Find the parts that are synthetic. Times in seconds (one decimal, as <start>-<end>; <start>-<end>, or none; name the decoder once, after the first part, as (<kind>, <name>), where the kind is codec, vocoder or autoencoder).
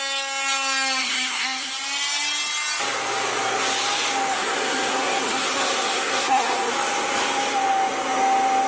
1.0-1.7 (codec, SNAC); 4.3-6.7